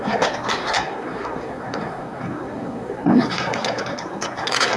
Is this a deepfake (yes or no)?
yes